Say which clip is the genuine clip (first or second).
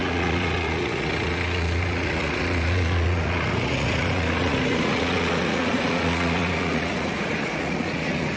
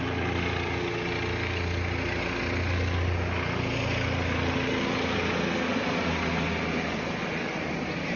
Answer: second